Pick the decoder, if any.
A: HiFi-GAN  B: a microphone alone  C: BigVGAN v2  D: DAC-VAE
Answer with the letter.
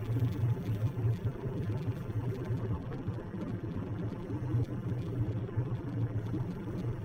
C